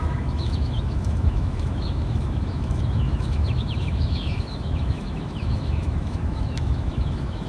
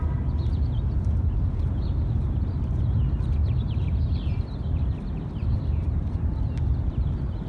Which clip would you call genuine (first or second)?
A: second